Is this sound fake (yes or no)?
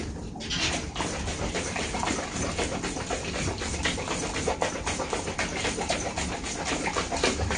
no